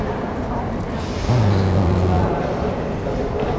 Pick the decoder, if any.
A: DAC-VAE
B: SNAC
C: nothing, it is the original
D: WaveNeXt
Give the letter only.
C